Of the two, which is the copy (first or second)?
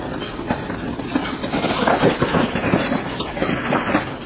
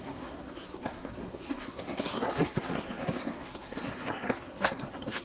second